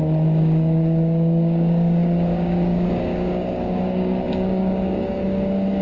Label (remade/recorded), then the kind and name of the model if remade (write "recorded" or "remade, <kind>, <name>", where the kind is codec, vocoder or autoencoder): remade, codec, DAC